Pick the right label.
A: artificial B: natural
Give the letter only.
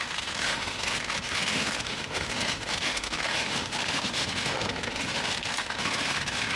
A